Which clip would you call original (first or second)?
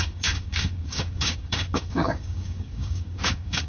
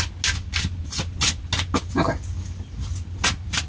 second